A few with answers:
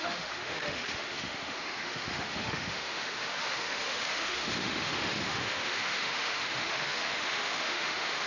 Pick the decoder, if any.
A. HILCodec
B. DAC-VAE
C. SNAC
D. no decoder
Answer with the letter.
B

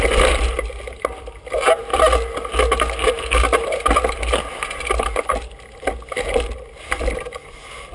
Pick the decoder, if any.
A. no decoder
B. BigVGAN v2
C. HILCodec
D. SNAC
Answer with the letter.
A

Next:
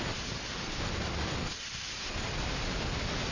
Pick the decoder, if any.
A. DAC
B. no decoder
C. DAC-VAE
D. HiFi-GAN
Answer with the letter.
B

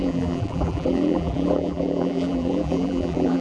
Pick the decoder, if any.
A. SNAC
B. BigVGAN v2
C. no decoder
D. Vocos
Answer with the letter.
B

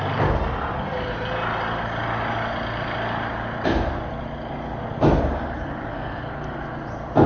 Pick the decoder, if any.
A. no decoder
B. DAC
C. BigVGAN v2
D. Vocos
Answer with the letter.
A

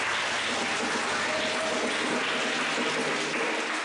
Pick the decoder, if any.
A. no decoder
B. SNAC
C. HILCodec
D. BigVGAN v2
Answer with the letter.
A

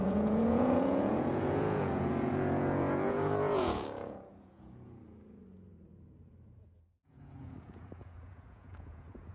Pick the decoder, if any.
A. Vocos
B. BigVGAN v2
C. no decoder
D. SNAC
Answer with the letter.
A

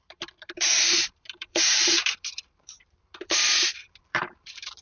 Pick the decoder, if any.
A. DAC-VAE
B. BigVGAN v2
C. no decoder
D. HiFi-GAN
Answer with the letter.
B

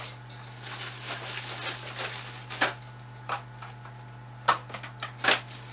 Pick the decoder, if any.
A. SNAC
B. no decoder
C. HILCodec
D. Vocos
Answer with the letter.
B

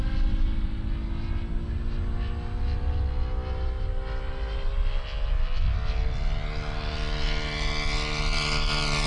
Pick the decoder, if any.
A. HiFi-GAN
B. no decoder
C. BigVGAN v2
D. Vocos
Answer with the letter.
B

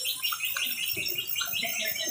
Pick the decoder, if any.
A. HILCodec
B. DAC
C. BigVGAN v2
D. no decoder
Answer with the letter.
D